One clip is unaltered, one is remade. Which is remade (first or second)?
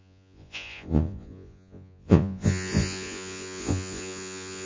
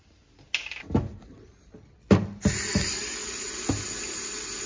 first